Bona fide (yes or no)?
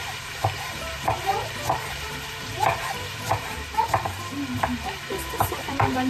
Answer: no